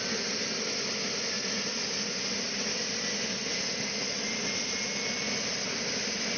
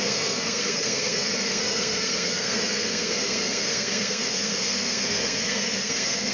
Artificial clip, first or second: second